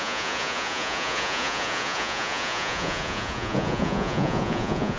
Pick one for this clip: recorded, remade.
remade